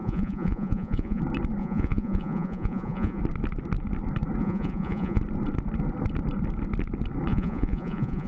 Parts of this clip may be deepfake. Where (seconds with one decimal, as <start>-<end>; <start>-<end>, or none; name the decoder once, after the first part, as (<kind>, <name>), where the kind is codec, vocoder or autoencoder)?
0.0-1.2 (vocoder, Vocos); 1.6-3.2; 4.4-5.2; 7.3-8.3